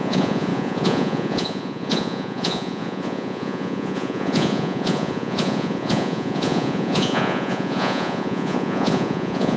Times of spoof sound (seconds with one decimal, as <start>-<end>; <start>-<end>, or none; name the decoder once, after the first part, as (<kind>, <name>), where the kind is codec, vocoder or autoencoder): 0.0-9.6 (vocoder, Vocos)